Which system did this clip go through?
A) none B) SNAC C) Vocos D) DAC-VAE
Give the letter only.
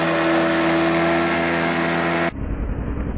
A